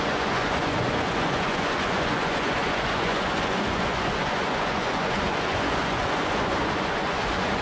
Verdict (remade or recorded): remade